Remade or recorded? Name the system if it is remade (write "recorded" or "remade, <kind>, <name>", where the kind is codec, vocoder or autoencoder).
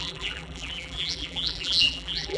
remade, vocoder, BigVGAN v2